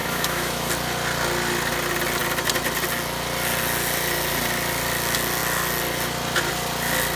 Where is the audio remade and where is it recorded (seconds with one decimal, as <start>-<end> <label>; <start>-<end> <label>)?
0.0-0.7 remade; 0.7-7.2 recorded